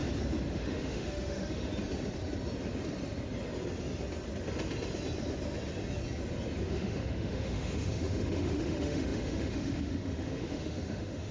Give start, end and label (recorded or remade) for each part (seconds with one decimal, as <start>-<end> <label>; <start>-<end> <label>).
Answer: 0.0-0.5 recorded; 0.5-1.7 remade; 1.7-6.7 recorded; 6.7-11.3 remade